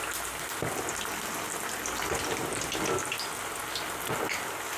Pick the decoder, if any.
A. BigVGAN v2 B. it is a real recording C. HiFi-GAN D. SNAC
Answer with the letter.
B